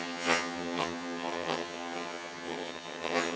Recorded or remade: remade